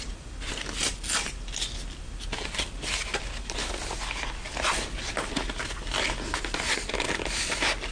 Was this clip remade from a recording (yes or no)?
no